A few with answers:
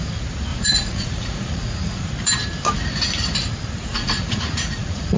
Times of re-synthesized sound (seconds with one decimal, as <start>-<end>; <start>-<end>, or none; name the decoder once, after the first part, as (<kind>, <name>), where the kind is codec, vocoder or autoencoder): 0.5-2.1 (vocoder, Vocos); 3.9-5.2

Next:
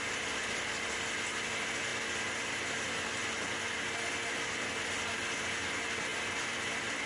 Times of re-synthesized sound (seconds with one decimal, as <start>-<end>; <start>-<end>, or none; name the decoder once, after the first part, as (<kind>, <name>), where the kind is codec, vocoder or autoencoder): none

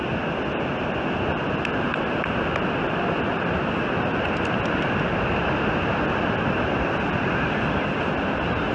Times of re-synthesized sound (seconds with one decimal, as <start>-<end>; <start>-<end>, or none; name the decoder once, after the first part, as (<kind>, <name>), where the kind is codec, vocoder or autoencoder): none

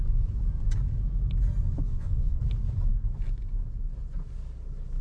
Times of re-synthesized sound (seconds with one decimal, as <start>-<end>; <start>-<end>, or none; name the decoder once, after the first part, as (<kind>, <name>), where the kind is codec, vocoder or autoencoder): 1.9-2.4 (vocoder, Vocos)